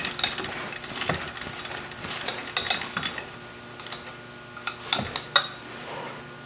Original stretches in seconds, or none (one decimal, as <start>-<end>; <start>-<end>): 0.0-6.5